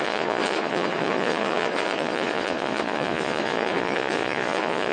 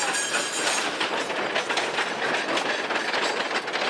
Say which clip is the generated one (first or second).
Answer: first